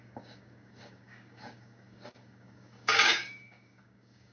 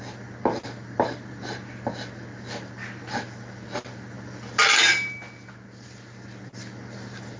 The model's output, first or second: first